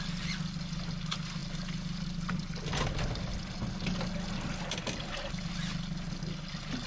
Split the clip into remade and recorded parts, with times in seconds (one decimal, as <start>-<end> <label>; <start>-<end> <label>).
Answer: 0.0-6.9 recorded